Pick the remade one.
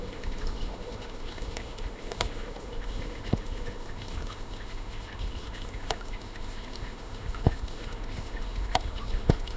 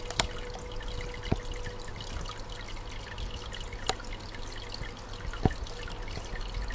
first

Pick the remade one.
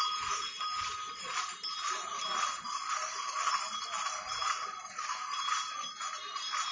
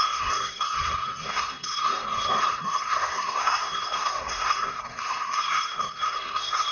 second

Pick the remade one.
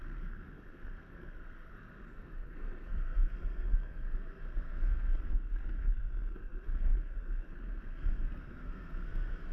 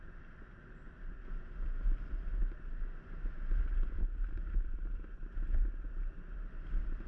first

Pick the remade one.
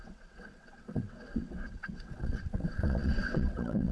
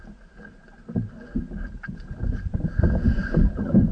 first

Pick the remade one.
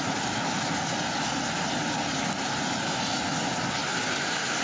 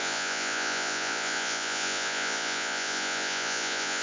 second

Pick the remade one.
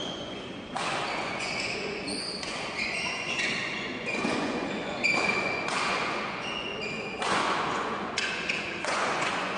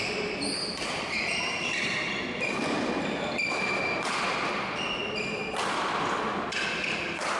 first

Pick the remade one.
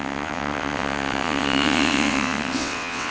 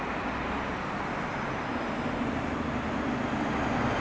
first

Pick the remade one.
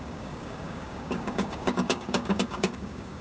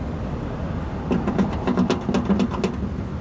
first